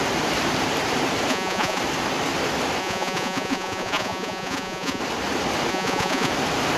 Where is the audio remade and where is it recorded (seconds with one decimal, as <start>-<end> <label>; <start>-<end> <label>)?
0.0-1.3 recorded; 1.3-1.8 remade; 1.8-2.8 recorded; 2.8-5.0 remade; 5.0-5.7 recorded; 5.7-6.3 remade; 6.3-6.8 recorded

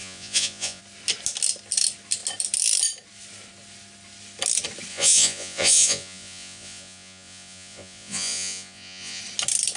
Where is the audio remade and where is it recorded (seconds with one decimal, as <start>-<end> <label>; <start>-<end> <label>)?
0.0-0.8 remade; 0.8-4.9 recorded; 4.9-9.2 remade; 9.2-9.8 recorded

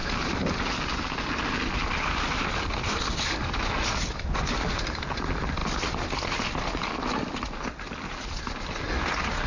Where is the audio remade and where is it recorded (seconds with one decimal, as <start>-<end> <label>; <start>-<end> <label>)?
0.0-9.5 recorded

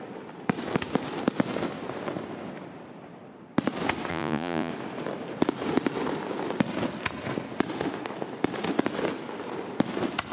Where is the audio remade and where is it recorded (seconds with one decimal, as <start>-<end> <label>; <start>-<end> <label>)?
0.0-4.1 recorded; 4.1-4.7 remade; 4.7-10.3 recorded

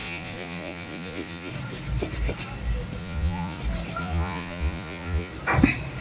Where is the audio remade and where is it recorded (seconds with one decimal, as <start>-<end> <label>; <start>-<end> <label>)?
0.0-1.5 remade; 1.5-3.0 recorded; 3.0-3.6 remade; 3.6-4.0 recorded; 4.0-5.3 remade; 5.3-6.0 recorded

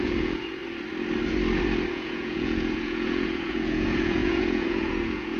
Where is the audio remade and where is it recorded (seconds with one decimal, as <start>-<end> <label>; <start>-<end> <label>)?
0.0-0.6 remade; 0.6-1.9 recorded; 1.9-5.4 remade

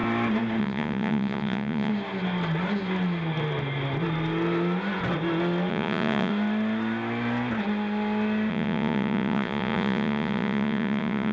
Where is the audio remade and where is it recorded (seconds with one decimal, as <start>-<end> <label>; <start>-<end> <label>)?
0.0-0.6 recorded; 0.6-1.9 remade; 1.9-5.7 recorded; 5.7-6.3 remade; 6.3-8.5 recorded; 8.5-11.3 remade